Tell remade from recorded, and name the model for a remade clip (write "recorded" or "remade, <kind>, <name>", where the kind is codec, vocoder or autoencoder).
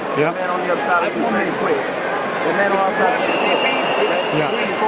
recorded